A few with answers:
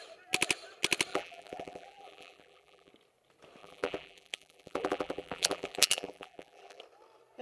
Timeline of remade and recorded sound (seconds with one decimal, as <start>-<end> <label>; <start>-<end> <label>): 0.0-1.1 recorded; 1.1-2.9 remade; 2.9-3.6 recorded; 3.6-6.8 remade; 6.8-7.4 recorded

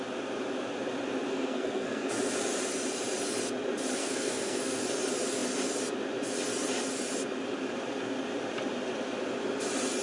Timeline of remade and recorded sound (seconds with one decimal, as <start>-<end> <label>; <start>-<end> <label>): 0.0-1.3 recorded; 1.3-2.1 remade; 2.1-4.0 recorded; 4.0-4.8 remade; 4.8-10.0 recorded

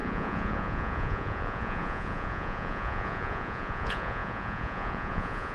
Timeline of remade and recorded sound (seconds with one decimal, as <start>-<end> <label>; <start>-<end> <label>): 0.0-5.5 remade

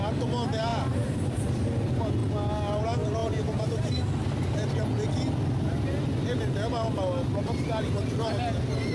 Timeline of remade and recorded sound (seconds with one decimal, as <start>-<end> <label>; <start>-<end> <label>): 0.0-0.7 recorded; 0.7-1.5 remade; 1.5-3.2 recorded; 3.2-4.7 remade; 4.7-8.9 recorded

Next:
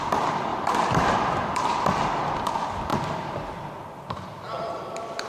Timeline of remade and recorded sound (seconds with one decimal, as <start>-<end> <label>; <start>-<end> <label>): 0.0-0.5 recorded; 0.5-1.7 remade; 1.7-5.3 recorded

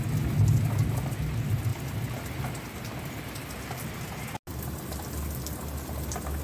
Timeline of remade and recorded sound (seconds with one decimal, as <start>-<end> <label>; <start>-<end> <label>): 0.0-6.4 recorded